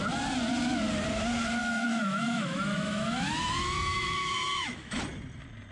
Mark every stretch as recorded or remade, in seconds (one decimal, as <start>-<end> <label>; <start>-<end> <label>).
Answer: 0.0-1.6 recorded; 1.6-5.0 remade; 5.0-5.7 recorded